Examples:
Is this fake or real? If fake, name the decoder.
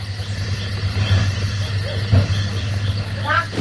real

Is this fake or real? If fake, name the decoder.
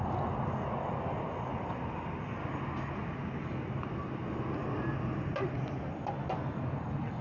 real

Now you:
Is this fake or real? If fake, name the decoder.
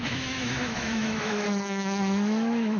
fake, autoencoder, DAC-VAE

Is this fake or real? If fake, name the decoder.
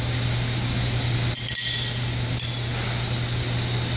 real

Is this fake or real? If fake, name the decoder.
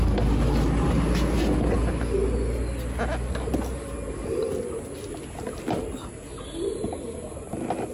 real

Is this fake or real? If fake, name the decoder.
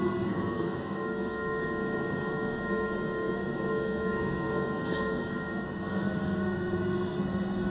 fake, codec, SNAC